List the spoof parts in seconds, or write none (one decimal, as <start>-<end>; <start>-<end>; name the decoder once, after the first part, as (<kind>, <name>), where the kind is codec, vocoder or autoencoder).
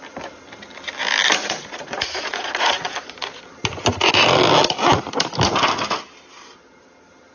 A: 1.4-3.4 (vocoder, Vocos)